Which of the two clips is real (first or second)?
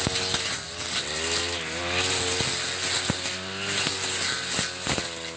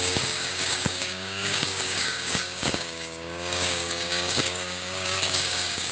first